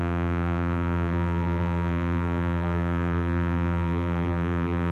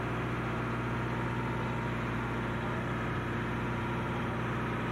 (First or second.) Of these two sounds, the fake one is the first